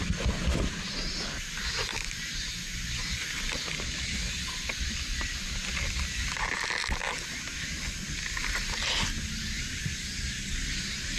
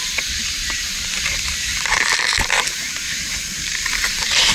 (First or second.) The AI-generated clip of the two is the second